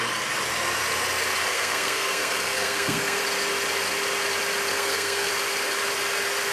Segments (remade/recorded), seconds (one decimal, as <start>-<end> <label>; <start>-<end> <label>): 0.0-1.5 recorded; 1.5-3.2 remade; 3.2-4.7 recorded; 4.7-5.3 remade; 5.3-6.5 recorded